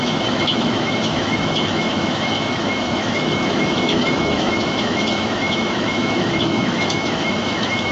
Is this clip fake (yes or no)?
yes